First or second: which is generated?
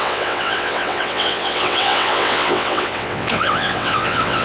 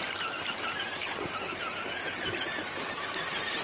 first